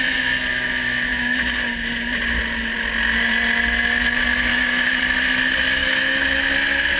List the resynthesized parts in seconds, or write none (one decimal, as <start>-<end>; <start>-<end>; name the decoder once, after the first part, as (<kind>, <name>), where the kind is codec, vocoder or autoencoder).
4.5-5.0 (autoencoder, DAC-VAE); 5.8-6.4